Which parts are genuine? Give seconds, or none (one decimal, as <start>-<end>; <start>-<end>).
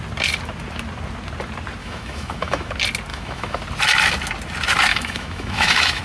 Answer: 0.0-1.8; 2.7-3.1; 3.6-4.9